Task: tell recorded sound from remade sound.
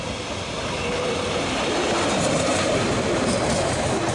recorded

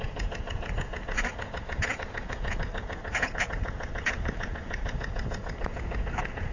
remade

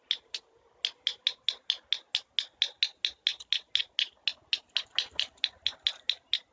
recorded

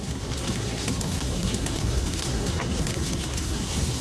remade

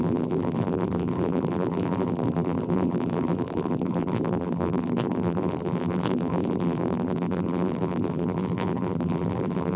remade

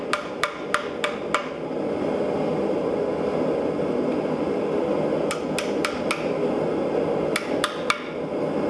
recorded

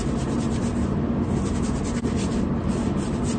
recorded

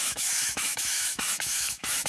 remade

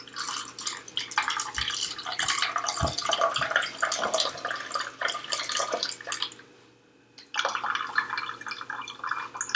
recorded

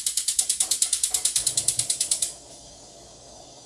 remade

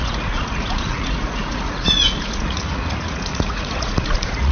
remade